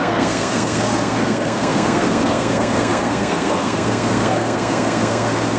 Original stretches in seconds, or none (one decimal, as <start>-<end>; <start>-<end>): none